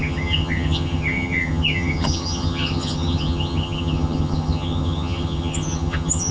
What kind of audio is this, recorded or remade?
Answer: remade